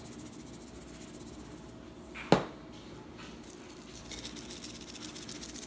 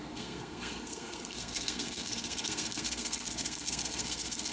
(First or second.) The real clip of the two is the first